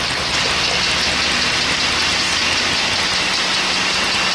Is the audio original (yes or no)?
yes